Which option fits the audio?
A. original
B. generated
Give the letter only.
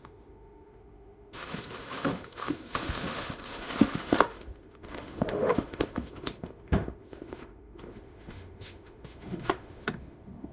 B